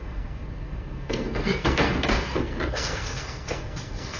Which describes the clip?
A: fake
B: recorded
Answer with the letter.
A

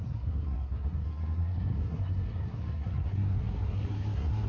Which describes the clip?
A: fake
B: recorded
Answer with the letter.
A